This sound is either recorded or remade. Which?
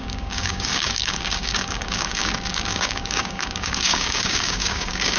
remade